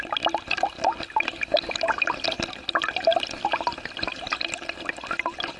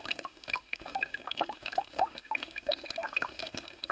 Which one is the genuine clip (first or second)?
first